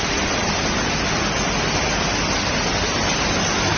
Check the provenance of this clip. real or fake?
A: fake